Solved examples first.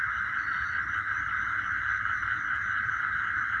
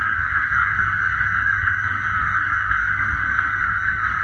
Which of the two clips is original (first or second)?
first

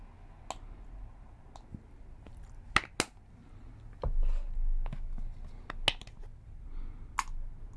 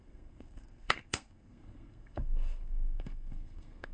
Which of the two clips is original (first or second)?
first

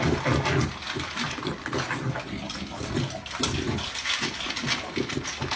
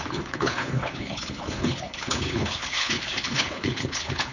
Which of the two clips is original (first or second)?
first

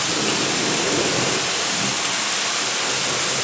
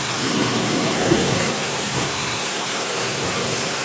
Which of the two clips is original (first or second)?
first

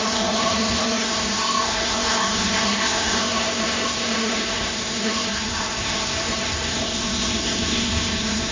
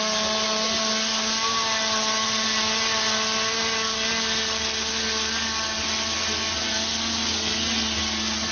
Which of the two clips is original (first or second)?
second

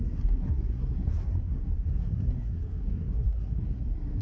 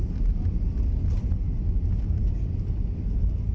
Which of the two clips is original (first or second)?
second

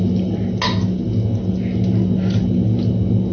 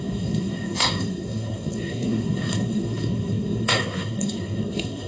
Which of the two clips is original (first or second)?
first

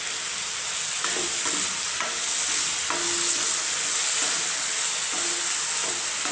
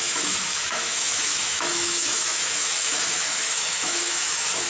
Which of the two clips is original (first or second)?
first